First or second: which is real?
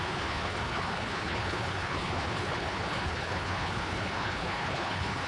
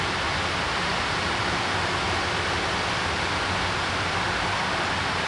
second